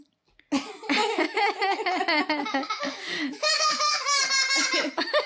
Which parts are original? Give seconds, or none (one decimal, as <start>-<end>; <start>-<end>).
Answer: 0.0-1.0; 4.2-5.3